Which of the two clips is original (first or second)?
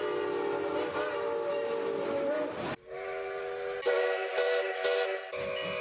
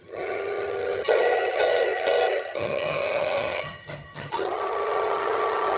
first